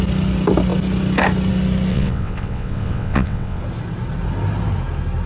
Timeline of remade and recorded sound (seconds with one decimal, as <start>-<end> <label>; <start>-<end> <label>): 0.0-1.9 recorded; 1.9-3.6 remade; 3.6-5.3 recorded